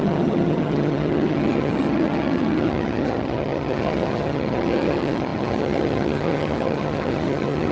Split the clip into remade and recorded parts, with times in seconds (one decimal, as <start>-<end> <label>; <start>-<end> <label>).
0.0-7.7 remade